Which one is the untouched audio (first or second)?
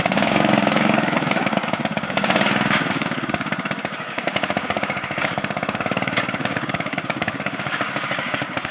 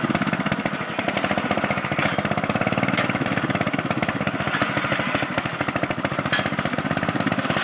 second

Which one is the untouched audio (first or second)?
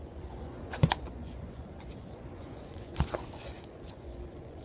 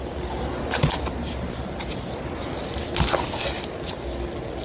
second